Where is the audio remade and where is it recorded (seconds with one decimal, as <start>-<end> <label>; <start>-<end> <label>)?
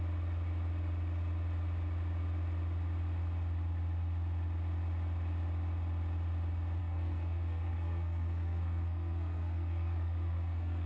0.0-6.8 recorded; 6.8-10.9 remade